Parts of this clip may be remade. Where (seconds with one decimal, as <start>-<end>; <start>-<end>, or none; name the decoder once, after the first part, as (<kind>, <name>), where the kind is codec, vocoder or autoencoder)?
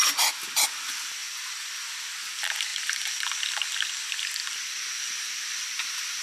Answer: none